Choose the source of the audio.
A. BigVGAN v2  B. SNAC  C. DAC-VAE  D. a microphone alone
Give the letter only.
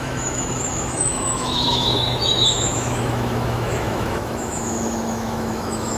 C